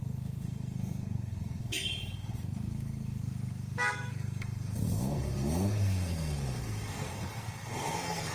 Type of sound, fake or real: fake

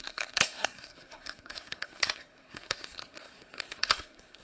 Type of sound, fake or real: fake